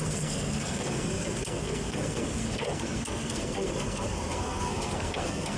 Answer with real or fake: fake